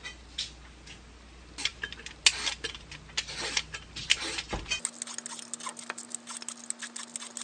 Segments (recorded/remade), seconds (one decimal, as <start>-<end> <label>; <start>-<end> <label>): 0.0-7.4 recorded